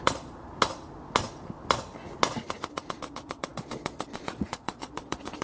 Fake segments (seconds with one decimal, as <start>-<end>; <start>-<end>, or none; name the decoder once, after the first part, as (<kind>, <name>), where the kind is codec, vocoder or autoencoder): 0.0-0.5 (vocoder, Vocos); 2.9-5.4